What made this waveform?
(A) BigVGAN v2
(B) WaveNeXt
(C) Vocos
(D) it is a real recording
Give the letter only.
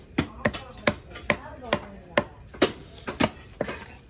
D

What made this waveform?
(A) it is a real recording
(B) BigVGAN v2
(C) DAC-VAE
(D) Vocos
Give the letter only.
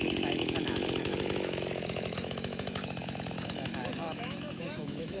C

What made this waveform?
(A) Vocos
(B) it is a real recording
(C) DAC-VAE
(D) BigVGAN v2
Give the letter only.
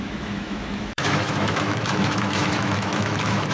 C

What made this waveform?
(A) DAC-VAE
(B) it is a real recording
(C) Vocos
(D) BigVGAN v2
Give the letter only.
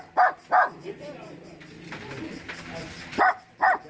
B